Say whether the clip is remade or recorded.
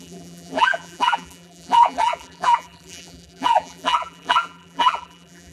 remade